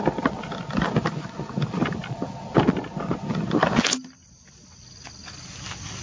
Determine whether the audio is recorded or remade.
recorded